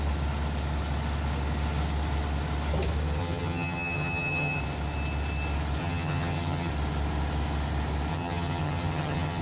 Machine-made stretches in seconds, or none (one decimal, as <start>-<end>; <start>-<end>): 3.2-4.6; 5.8-6.7; 8.1-9.4